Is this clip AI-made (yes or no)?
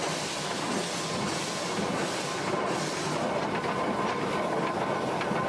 no